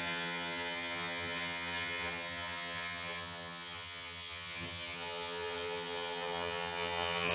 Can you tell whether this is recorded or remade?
remade